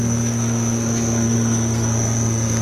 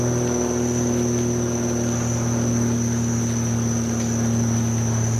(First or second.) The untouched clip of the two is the second